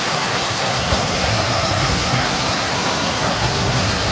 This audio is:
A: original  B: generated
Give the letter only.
B